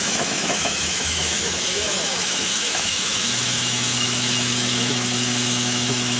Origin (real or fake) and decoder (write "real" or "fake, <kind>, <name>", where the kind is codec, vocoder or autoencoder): fake, autoencoder, DAC-VAE